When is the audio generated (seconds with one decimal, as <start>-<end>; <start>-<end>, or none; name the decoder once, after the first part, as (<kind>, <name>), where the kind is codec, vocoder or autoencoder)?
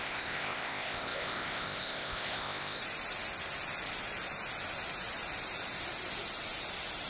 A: 0.0-2.8 (codec, ZipCodec)